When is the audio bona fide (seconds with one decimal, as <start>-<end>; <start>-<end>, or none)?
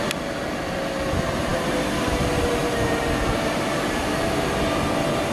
0.0-5.3